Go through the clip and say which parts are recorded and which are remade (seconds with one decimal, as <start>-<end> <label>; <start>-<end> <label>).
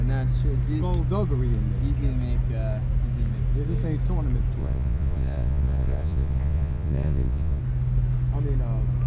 0.0-4.6 recorded; 4.6-7.6 remade; 7.6-9.1 recorded